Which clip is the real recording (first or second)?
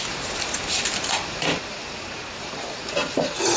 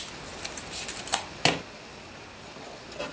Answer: second